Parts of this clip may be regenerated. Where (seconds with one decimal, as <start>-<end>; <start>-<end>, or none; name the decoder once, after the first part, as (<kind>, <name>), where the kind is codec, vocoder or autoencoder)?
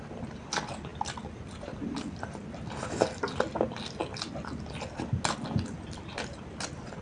none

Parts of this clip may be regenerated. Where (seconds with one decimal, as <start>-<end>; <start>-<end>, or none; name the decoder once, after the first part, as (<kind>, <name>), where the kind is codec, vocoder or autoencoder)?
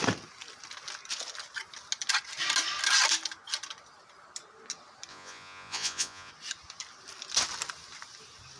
5.1-6.3 (vocoder, Vocos)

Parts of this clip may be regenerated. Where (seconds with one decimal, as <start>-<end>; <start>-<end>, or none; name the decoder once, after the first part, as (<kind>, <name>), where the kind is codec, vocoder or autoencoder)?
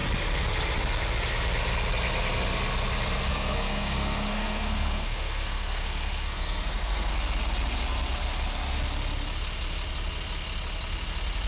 3.3-7.1 (codec, SNAC)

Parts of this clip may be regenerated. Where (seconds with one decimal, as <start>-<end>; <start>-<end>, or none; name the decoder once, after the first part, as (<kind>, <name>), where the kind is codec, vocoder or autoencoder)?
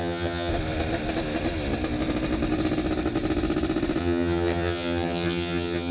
0.0-0.5 (vocoder, HiFi-GAN); 4.0-5.9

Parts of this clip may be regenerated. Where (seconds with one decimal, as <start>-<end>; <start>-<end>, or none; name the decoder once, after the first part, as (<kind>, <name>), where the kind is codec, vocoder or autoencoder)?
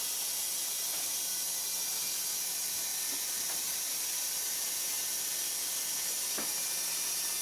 2.9-5.7 (vocoder, BigVGAN v2)